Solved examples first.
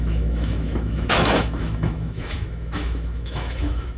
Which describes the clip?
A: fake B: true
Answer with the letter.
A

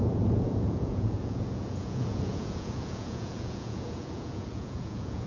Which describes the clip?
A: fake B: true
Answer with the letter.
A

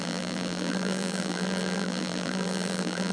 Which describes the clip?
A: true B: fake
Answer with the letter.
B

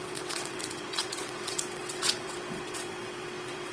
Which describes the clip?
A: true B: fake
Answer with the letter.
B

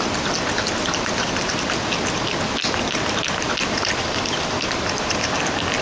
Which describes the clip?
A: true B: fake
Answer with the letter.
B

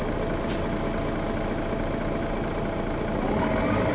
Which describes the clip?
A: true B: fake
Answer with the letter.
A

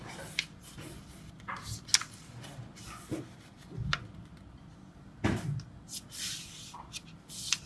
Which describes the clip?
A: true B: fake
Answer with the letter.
A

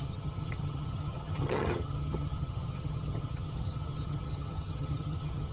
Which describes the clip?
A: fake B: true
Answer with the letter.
A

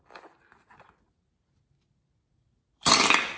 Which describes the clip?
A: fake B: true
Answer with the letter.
B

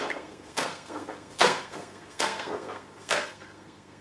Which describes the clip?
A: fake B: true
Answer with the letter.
A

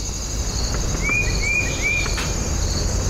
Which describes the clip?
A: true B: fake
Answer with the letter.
A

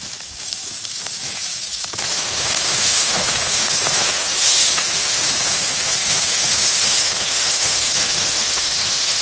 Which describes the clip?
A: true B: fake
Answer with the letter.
B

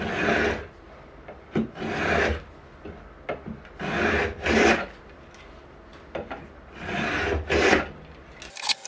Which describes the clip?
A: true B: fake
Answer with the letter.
A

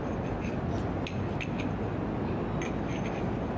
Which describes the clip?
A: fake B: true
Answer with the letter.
B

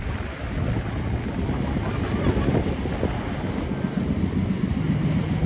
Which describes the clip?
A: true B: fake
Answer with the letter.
A